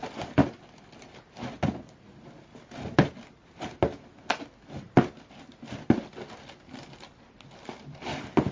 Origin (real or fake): real